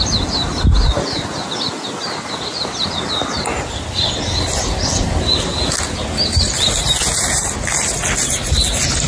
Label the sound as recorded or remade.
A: recorded